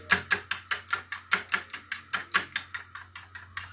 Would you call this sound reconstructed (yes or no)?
no